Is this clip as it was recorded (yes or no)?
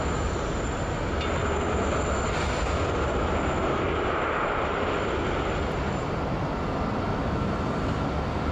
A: yes